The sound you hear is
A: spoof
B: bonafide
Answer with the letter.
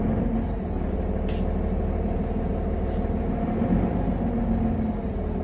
B